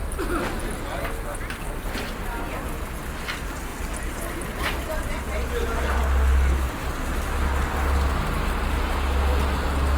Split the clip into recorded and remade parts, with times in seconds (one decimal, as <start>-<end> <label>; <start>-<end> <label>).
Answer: 0.0-10.0 recorded